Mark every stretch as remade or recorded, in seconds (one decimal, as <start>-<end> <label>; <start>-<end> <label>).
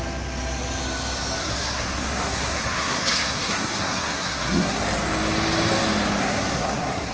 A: 0.0-1.4 recorded; 1.4-4.8 remade; 4.8-6.2 recorded; 6.2-7.1 remade